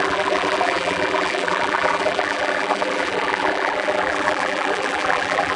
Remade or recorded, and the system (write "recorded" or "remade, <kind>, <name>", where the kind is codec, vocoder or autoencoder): remade, vocoder, BigVGAN v2